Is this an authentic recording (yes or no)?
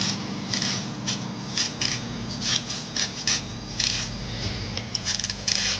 yes